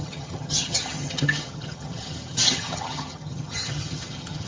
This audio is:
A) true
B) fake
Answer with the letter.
B